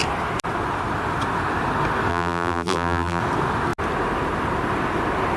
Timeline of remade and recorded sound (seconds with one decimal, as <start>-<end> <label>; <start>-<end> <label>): 0.0-2.1 recorded; 2.1-3.2 remade; 3.2-5.4 recorded